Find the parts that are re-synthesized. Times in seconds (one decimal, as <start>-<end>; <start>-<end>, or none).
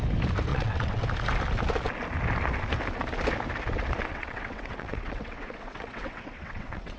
0.5-1.0; 4.1-7.0